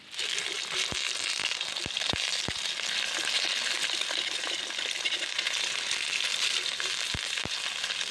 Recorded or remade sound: recorded